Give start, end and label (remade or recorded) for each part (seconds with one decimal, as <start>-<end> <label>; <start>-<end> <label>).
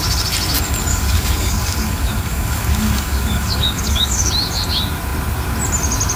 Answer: 0.0-0.9 recorded; 0.9-4.3 remade; 4.3-6.2 recorded